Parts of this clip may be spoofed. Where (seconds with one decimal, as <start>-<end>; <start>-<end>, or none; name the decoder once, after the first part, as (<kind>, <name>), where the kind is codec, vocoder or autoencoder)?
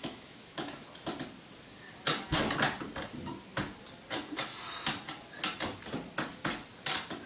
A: 0.0-0.7 (autoencoder, DAC-VAE)